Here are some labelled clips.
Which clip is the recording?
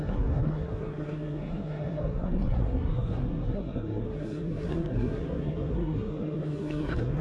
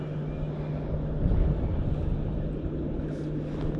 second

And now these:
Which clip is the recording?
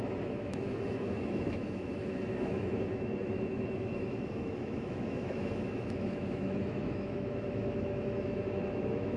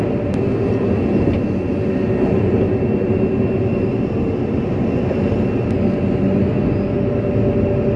second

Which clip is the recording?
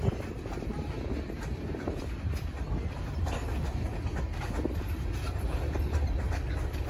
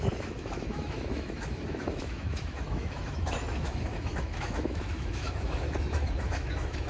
first